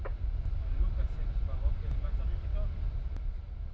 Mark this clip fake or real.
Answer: real